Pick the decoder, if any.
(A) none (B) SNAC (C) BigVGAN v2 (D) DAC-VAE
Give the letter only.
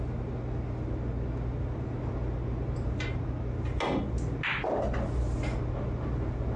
A